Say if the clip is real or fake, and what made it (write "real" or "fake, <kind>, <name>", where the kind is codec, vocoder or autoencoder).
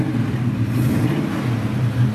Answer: real